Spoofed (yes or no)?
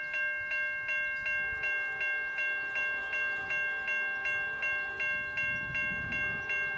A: no